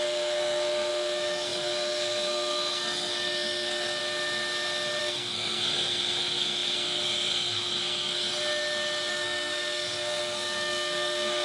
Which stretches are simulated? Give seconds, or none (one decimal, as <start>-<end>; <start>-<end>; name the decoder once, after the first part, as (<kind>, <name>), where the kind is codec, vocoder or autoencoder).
0.0-4.0 (codec, SNAC); 5.0-8.3; 9.1-11.4